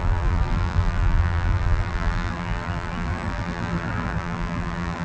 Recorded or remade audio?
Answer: remade